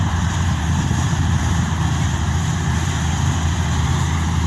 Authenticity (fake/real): fake